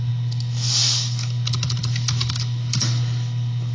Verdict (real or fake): real